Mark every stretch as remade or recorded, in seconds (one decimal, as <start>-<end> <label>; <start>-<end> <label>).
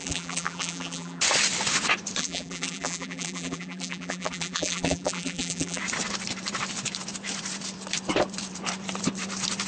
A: 0.0-1.2 remade; 1.2-2.2 recorded; 2.2-5.8 remade; 5.8-9.7 recorded